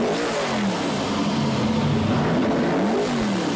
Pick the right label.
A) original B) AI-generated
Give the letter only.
A